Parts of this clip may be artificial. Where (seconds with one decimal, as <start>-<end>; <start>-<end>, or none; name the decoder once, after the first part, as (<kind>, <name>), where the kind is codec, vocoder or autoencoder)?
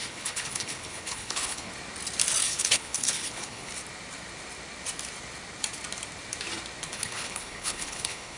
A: 0.0-1.7 (codec, HILCodec); 2.4-3.7; 6.8-8.4